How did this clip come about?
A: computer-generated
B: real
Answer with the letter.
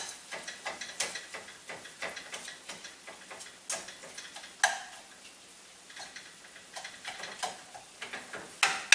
B